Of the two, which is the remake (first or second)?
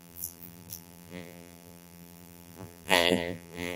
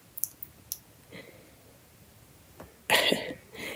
first